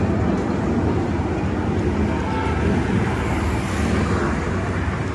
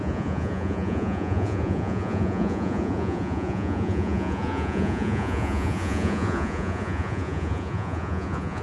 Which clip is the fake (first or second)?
second